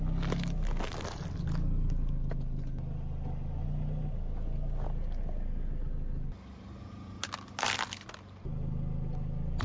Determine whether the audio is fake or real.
real